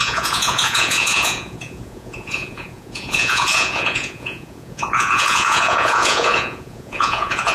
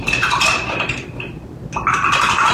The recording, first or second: second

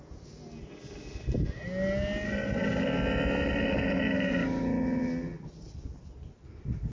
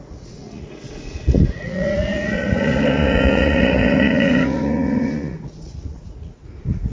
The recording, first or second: first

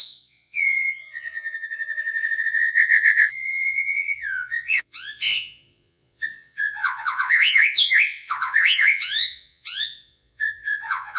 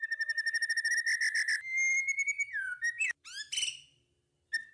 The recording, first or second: second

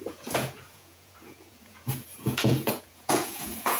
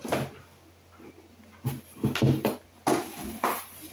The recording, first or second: second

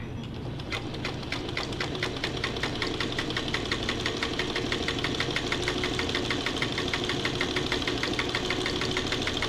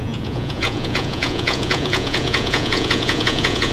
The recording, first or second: first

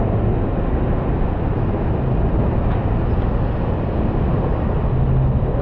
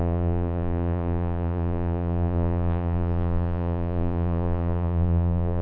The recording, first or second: first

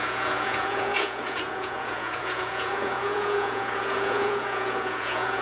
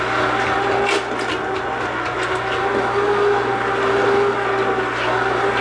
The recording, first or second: second